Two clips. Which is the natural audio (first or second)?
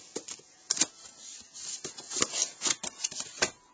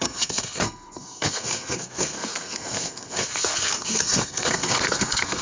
first